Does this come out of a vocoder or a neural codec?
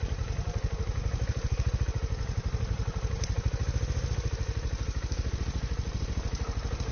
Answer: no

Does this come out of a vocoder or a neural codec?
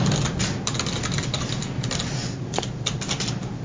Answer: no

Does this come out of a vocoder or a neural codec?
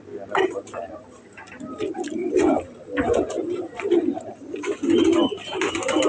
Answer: no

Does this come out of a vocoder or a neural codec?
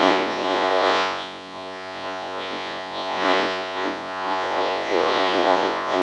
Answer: yes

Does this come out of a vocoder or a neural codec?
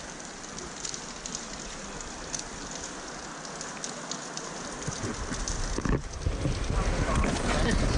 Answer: no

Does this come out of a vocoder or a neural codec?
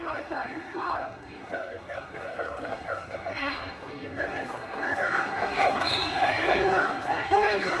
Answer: yes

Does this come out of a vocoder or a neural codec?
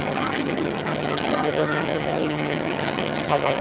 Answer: yes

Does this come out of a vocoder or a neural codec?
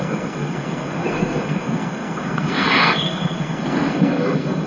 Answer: yes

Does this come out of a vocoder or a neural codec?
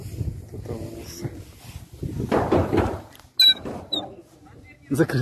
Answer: no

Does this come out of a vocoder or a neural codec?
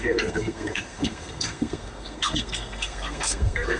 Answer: yes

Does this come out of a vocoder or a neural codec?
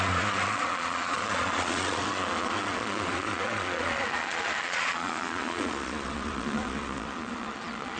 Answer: yes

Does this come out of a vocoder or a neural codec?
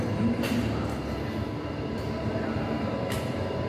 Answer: yes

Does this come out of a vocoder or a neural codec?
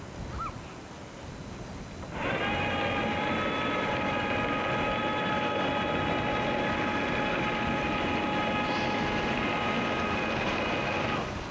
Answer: no